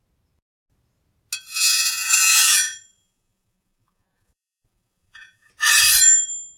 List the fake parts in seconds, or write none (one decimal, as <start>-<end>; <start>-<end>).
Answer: 1.5-5.5

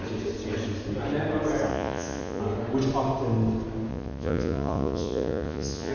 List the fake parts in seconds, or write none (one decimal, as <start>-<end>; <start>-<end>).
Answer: 1.7-2.4; 3.9-5.9

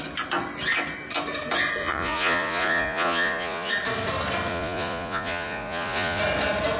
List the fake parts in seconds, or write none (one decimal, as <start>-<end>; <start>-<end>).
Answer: 1.8-3.7; 4.5-6.2

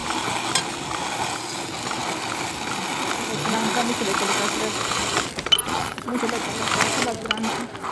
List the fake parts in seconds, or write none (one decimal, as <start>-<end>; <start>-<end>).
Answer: 5.6-6.2

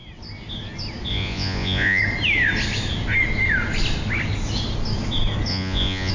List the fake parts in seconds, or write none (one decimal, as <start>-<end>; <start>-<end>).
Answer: 1.1-2.0; 5.5-6.1

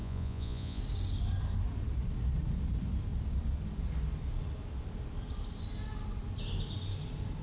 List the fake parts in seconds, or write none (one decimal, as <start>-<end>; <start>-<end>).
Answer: 0.0-0.8

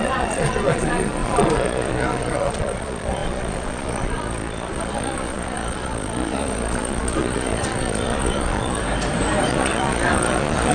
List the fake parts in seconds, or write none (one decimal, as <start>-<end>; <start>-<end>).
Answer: 0.0-8.8; 9.5-10.7